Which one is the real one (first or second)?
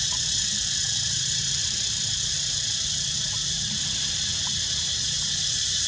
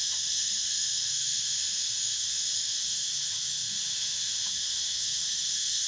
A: first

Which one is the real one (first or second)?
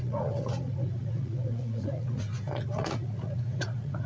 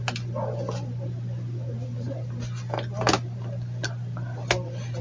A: second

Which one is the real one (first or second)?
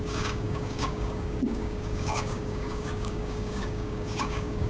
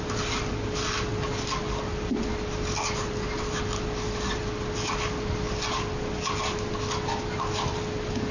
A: second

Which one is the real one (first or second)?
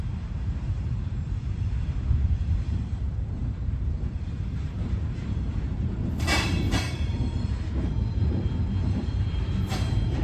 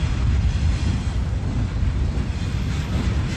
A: second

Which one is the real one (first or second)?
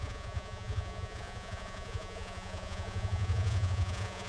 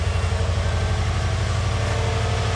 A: second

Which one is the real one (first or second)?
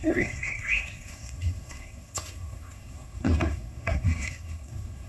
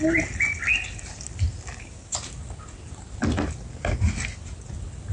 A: second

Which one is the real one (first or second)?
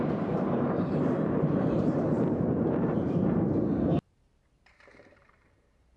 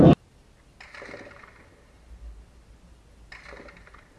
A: second